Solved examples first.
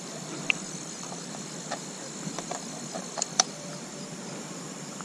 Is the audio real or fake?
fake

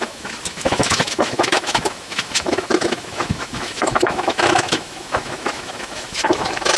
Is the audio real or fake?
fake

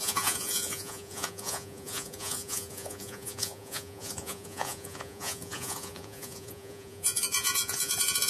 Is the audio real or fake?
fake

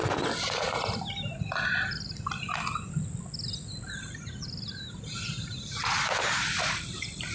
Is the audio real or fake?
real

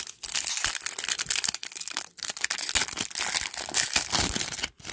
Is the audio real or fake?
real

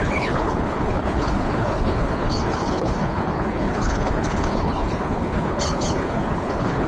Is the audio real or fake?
fake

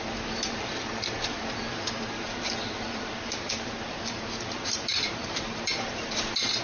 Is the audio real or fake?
fake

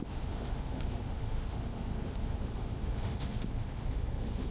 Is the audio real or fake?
fake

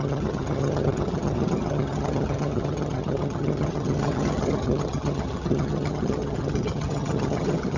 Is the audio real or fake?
fake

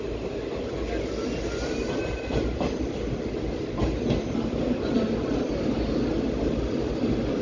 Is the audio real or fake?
real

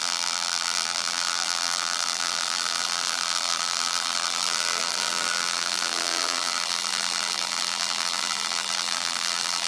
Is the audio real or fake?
fake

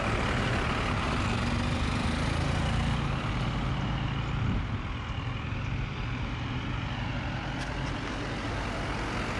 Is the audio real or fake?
real